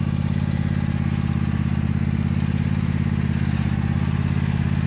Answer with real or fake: real